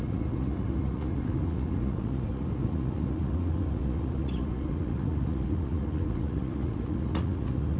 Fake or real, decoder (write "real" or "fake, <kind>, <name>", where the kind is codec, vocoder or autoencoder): fake, vocoder, Vocos